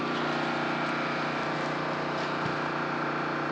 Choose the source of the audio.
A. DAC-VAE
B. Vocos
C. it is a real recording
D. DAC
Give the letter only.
C